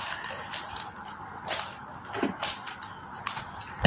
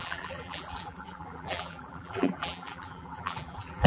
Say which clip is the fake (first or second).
second